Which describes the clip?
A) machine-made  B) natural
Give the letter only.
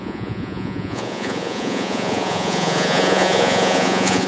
A